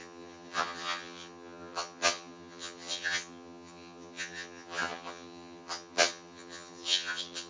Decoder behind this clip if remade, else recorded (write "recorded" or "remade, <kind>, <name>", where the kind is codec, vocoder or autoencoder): remade, vocoder, HiFi-GAN